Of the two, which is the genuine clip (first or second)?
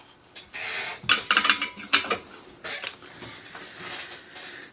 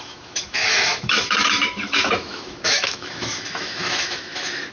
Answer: first